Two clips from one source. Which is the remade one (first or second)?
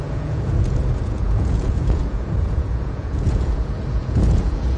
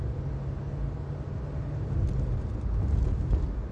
first